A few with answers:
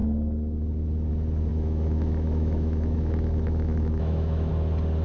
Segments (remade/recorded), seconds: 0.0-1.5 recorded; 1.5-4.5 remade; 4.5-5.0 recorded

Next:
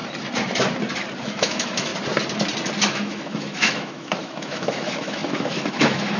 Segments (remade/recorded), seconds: 0.0-1.2 recorded; 1.2-1.9 remade; 1.9-2.9 recorded; 2.9-6.2 remade

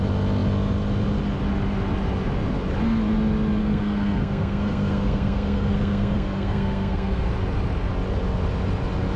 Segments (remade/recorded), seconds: 0.0-3.6 recorded; 3.6-7.3 remade; 7.3-9.2 recorded